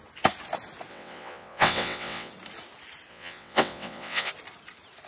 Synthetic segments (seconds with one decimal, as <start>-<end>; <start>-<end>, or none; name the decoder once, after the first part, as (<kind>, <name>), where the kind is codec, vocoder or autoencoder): 0.9-2.3 (vocoder, WaveNeXt); 3.1-4.3